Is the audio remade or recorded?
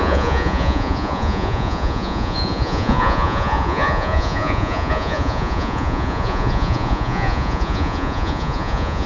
remade